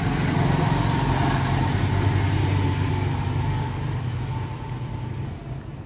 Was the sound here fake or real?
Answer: real